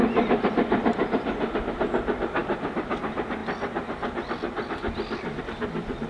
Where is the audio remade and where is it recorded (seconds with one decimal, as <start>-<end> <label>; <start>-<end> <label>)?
0.0-6.1 recorded